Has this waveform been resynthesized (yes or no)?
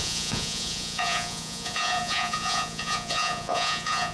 yes